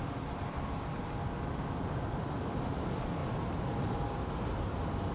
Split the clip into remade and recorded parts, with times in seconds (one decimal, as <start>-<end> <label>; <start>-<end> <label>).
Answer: 0.0-5.1 recorded